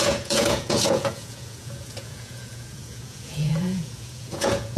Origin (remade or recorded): remade